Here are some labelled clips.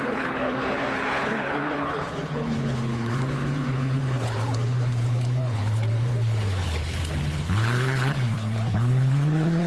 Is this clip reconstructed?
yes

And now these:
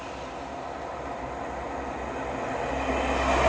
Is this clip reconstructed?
no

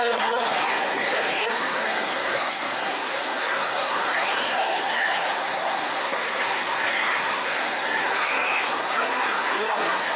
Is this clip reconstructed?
yes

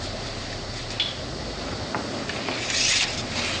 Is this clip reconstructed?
no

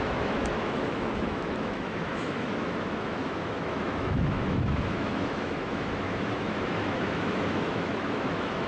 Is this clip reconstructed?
yes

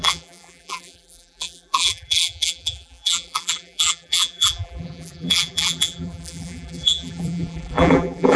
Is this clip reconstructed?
yes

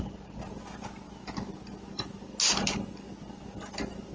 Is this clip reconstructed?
no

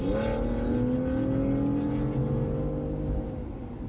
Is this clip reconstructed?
no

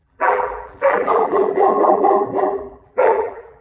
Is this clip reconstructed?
yes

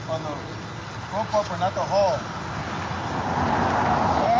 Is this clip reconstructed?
no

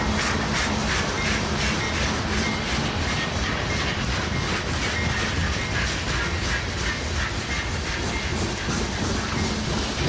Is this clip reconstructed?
no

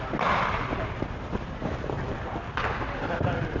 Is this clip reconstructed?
no